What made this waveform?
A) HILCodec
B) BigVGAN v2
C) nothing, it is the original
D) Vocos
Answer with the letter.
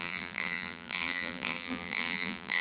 B